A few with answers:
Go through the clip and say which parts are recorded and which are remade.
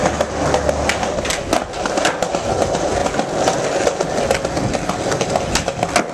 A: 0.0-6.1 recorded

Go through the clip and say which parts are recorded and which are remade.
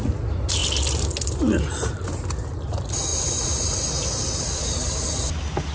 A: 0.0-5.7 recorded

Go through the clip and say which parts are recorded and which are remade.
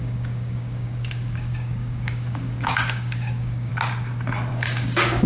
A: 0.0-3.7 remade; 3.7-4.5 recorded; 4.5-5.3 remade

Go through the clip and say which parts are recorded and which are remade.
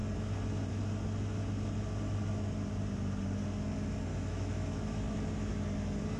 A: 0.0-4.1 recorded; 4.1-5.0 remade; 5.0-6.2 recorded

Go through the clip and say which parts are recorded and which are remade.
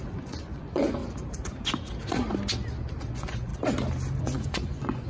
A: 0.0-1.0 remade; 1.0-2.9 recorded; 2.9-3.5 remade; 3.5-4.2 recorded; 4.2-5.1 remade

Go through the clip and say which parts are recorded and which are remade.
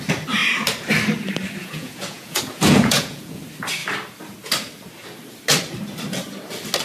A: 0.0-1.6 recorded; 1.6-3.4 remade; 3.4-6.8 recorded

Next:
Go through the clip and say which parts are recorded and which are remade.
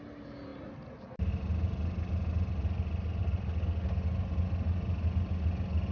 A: 0.0-5.9 recorded